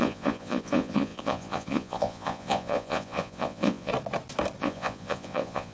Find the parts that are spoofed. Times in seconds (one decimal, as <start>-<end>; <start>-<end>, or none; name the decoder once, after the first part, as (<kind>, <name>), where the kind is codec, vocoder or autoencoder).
0.0-3.9 (vocoder, Vocos); 4.6-5.7